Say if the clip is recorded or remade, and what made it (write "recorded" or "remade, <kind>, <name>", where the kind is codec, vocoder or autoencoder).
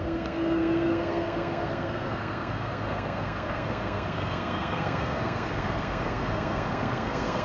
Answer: remade, codec, SNAC